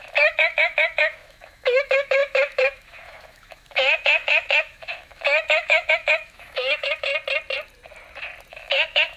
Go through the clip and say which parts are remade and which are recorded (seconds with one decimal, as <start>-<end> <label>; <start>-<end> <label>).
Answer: 0.0-7.1 remade; 7.1-8.5 recorded; 8.5-9.2 remade